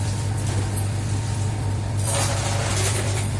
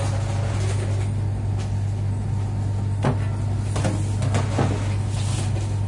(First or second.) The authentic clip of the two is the second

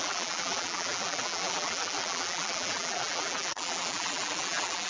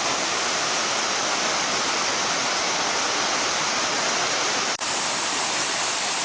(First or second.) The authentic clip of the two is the second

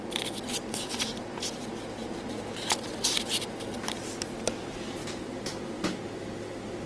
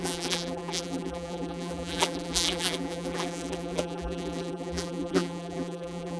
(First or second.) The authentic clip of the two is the first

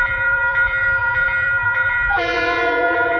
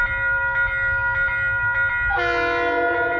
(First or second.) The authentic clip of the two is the second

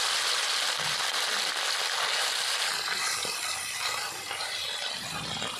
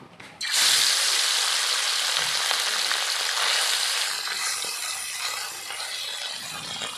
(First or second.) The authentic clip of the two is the second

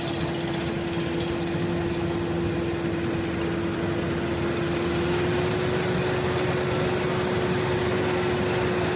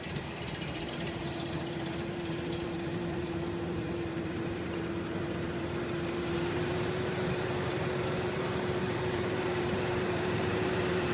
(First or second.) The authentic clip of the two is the first